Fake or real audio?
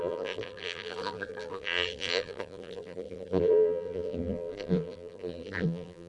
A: fake